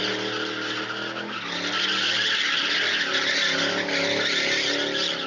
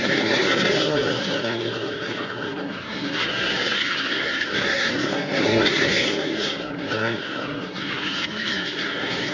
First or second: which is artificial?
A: second